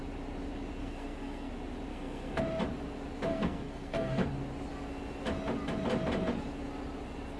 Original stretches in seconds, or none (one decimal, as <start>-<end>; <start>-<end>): 0.0-0.8; 1.5-1.9; 2.4-3.3; 4.3-7.4